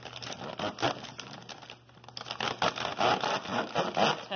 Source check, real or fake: real